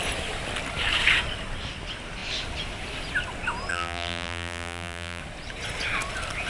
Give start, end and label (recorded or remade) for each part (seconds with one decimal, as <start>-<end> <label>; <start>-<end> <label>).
0.0-3.7 recorded; 3.7-5.2 remade; 5.2-6.5 recorded